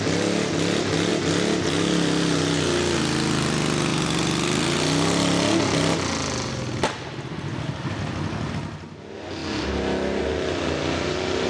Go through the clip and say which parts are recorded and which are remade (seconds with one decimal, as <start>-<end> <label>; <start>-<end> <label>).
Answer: 0.0-11.5 recorded